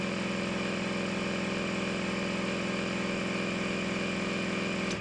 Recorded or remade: recorded